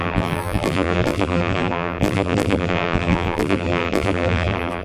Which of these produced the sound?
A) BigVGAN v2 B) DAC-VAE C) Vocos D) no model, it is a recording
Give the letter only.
A